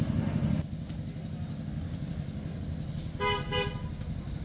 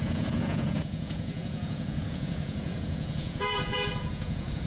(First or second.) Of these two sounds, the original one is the first